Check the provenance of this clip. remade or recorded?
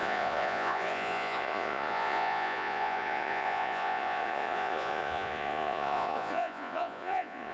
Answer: remade